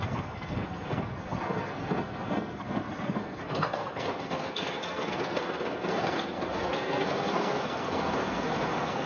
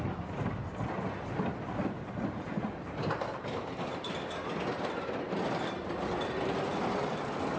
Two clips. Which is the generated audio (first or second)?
first